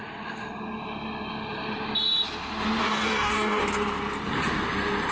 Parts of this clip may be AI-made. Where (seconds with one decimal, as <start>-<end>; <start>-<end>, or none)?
2.8-3.6